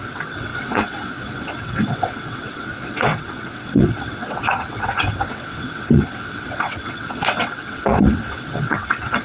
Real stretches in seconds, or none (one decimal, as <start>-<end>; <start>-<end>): none